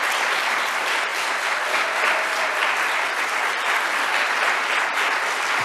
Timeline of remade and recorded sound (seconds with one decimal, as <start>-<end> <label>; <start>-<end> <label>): 0.0-1.1 remade; 1.1-2.2 recorded; 2.2-4.1 remade; 4.1-5.1 recorded; 5.1-5.6 remade